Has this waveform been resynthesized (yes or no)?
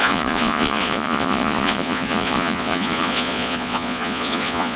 yes